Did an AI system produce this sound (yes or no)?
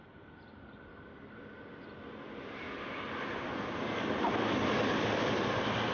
no